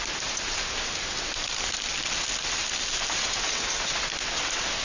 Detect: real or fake real